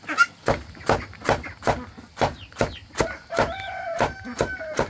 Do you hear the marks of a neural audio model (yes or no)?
no